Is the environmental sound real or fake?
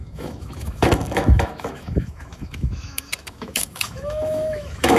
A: fake